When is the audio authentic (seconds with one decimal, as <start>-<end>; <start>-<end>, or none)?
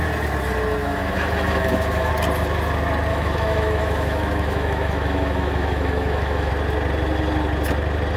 0.0-0.8; 2.1-3.1; 6.5-8.2